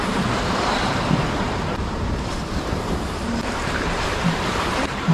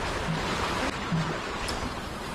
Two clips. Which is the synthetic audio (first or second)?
first